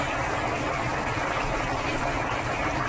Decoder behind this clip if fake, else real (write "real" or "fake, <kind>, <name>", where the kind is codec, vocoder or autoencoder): real